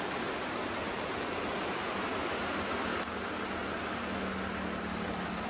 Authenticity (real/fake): real